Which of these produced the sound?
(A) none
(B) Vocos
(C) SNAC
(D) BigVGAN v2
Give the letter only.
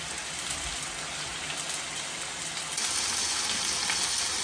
A